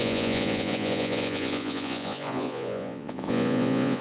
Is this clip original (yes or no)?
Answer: no